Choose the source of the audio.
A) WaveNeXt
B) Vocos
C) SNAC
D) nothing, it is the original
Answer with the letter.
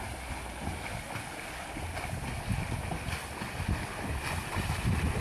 D